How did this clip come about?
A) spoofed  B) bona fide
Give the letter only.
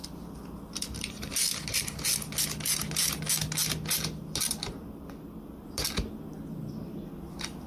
B